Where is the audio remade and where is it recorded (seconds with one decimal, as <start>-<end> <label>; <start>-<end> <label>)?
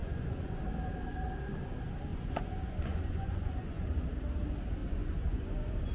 0.0-0.6 remade; 0.6-2.1 recorded; 2.1-4.0 remade; 4.0-4.8 recorded; 4.8-5.9 remade